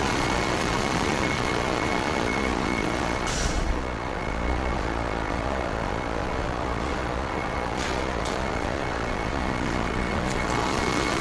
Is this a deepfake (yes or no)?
yes